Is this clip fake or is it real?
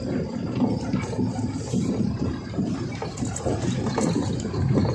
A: fake